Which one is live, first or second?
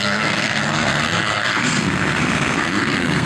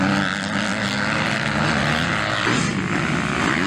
second